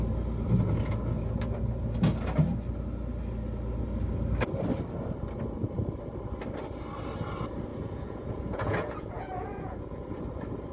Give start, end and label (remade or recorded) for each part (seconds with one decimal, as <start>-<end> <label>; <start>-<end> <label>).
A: 0.0-7.7 recorded; 7.7-10.2 remade; 10.2-10.7 recorded